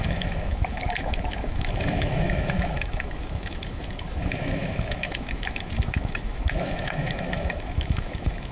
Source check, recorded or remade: remade